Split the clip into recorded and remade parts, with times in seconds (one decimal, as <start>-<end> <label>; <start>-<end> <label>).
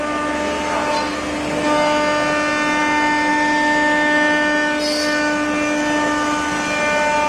0.0-7.3 recorded